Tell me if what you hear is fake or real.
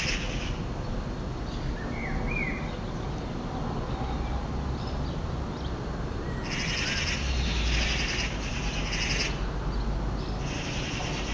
real